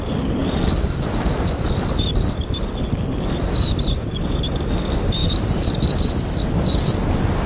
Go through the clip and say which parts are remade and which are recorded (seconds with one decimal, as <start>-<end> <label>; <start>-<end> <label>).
0.0-7.5 recorded